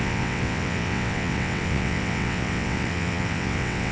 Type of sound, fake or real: fake